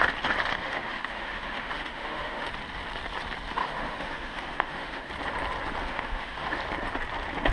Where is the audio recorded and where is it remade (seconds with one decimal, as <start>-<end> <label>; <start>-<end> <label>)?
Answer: 0.0-0.6 recorded; 0.6-2.5 remade; 2.5-3.6 recorded; 3.6-5.1 remade; 5.1-5.8 recorded; 5.8-6.6 remade; 6.6-7.5 recorded